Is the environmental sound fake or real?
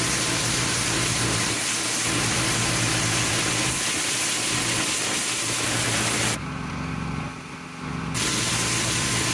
real